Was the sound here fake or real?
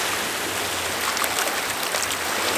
real